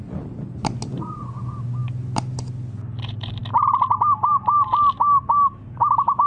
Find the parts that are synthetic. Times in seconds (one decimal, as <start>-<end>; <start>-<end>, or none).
none